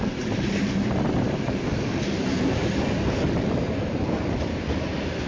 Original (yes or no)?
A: no